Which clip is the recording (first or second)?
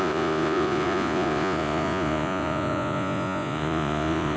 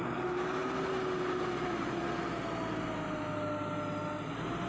second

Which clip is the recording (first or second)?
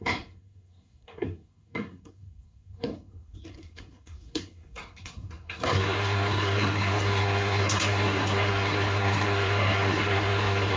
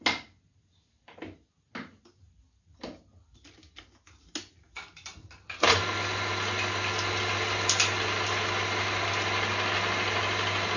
second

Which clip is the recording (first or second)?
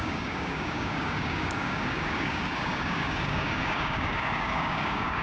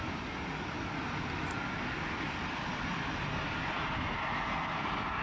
second